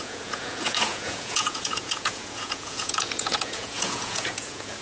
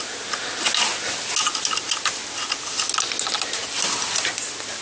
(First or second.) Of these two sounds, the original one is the second